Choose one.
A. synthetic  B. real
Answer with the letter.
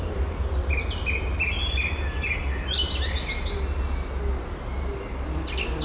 B